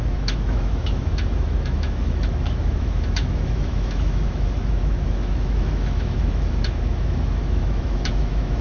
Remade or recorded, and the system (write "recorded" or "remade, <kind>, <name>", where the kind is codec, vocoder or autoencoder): remade, autoencoder, DAC-VAE